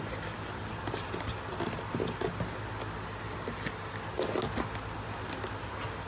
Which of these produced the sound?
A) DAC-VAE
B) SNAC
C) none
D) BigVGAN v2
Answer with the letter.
C